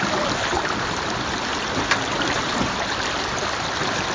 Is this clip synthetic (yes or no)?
yes